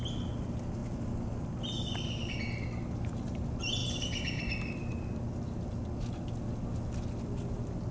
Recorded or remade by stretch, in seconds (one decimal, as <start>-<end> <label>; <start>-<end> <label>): 0.0-3.8 recorded; 3.8-4.4 remade; 4.4-7.9 recorded